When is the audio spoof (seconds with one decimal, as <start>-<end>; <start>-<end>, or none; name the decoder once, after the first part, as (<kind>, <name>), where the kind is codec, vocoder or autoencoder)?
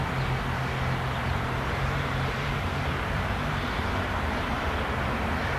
1.2-4.6 (vocoder, BigVGAN v2)